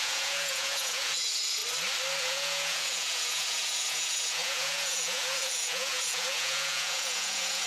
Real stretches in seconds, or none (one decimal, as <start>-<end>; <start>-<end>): 1.6-2.2